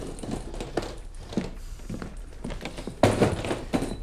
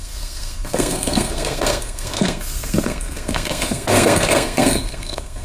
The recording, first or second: first